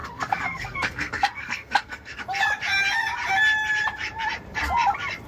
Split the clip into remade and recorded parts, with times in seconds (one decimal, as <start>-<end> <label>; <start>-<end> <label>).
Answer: 0.0-2.2 remade; 2.2-5.3 recorded